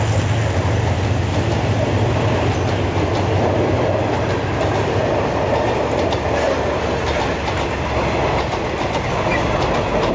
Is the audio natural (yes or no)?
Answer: yes